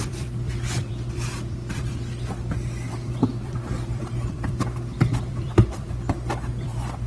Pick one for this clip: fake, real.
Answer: fake